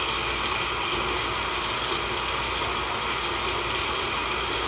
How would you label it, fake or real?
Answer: real